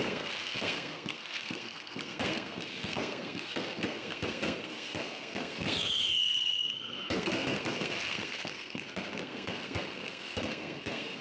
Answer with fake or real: fake